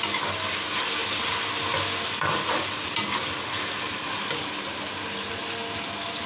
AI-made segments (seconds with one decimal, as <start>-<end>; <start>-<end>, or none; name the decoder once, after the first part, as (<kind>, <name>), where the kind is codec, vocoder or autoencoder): none